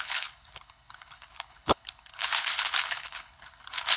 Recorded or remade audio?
remade